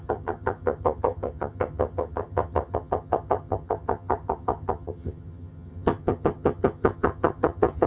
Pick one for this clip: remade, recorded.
remade